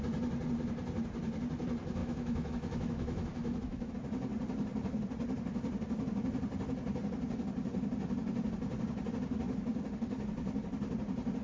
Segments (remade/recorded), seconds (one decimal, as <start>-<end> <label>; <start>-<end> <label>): 0.0-2.0 recorded; 2.0-3.9 remade; 3.9-11.4 recorded